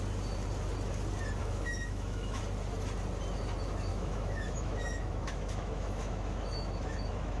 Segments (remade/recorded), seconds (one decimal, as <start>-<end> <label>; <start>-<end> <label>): 0.0-1.4 recorded; 1.4-2.4 remade; 2.4-3.9 recorded; 3.9-7.4 remade